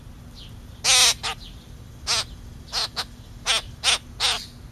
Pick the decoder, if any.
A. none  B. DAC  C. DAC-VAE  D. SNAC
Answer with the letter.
A